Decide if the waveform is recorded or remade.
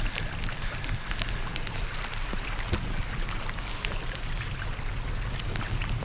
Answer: recorded